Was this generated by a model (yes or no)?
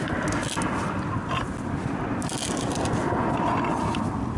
no